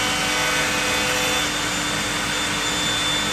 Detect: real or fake real